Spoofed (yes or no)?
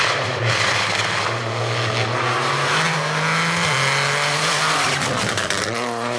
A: no